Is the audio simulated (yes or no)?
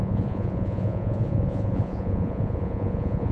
yes